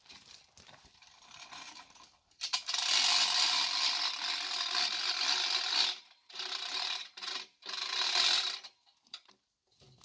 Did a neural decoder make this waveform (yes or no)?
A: yes